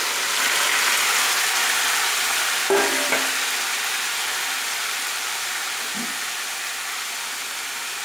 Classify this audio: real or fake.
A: real